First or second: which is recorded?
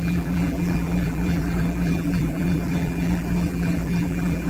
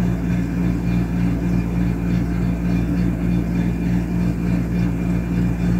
second